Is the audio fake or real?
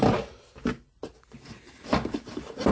fake